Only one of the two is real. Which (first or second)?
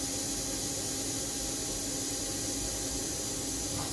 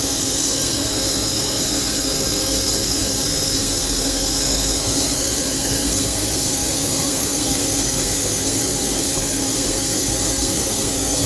first